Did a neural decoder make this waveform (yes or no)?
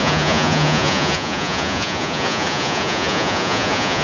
yes